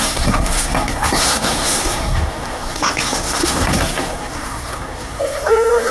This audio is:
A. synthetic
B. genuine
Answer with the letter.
A